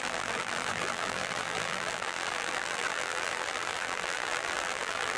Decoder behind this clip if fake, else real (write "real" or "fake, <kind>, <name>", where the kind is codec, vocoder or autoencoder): fake, vocoder, BigVGAN v2